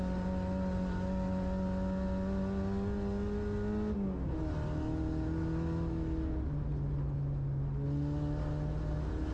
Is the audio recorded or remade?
recorded